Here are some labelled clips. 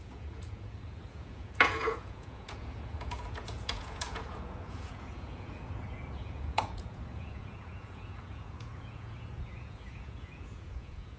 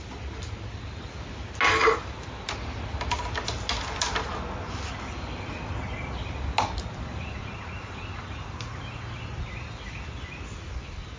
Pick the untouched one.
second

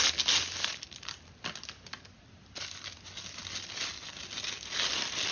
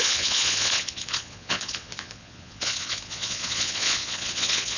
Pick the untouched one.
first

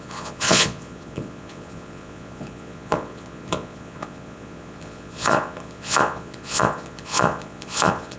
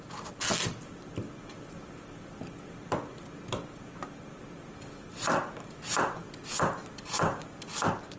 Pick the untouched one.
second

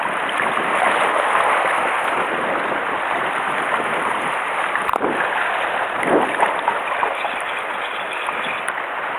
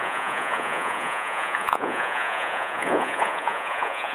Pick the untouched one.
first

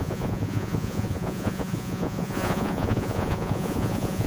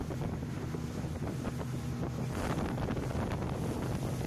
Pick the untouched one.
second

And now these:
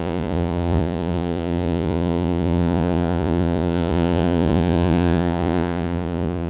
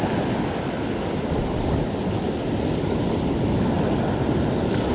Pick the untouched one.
second